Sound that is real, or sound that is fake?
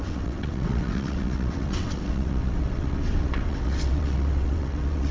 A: fake